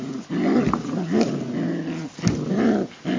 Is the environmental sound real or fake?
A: real